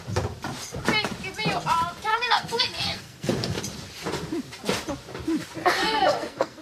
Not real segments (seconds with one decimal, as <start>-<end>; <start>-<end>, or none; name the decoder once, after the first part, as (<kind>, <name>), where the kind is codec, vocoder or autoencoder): 2.1-3.6 (codec, SNAC); 5.6-6.6